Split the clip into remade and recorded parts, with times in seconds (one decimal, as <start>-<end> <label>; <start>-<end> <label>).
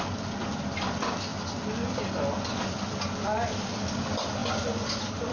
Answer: 0.0-5.3 recorded